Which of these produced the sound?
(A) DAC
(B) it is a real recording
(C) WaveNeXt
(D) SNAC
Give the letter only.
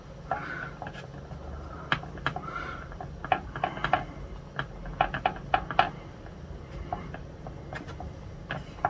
B